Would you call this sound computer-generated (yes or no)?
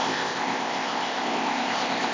yes